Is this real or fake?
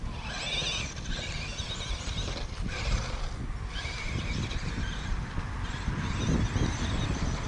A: real